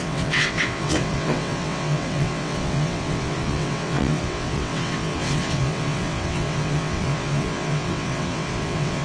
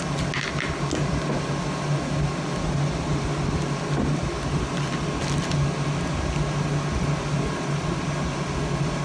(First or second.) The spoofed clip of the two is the first